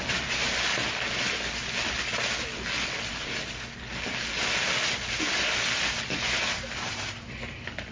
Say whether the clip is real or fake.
real